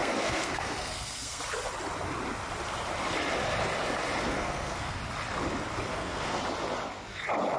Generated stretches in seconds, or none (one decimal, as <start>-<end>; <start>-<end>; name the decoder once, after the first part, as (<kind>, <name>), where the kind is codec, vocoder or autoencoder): 0.0-1.4 (codec, SNAC); 4.2-5.0; 5.9-6.4